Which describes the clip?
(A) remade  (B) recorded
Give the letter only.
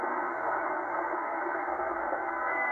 A